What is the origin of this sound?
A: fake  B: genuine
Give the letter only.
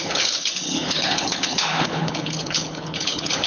A